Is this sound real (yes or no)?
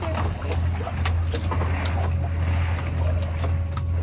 yes